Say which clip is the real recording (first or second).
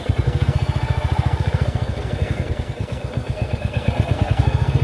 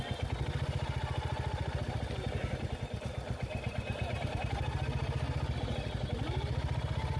second